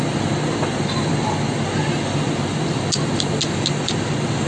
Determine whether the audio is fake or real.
real